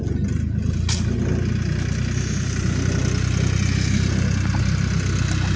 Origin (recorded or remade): recorded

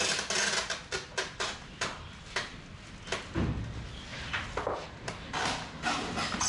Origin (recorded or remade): recorded